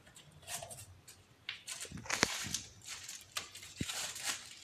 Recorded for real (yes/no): no